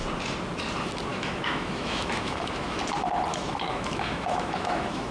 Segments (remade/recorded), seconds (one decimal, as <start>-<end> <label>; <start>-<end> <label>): 0.0-1.1 recorded; 1.1-2.8 remade; 2.8-3.3 recorded; 3.3-5.1 remade